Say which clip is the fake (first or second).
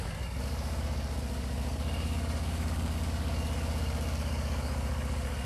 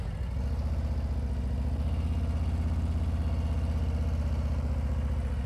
first